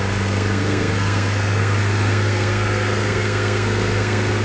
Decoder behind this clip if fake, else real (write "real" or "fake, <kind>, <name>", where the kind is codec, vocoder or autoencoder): fake, codec, SNAC